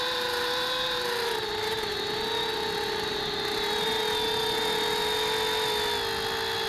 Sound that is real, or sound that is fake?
real